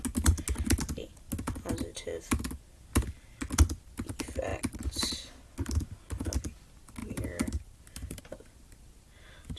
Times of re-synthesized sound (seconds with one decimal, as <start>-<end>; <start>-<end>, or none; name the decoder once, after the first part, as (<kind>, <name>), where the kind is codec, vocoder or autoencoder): 1.9-2.5 (vocoder, BigVGAN v2); 7.0-8.2